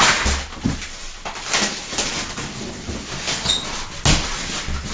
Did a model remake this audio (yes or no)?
no